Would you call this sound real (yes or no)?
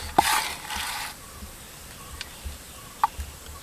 yes